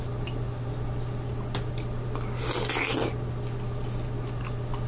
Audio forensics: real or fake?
real